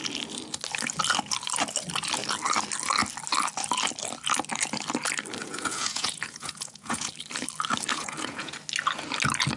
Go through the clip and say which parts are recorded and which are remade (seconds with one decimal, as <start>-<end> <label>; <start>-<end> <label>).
0.0-5.4 recorded; 5.4-7.1 remade; 7.1-7.9 recorded; 7.9-8.5 remade; 8.5-9.6 recorded